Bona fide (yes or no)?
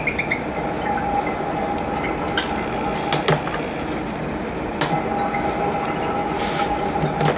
yes